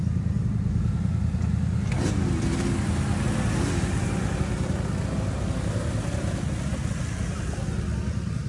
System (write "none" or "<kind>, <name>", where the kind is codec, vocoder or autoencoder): none